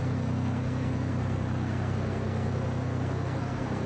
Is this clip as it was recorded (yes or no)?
no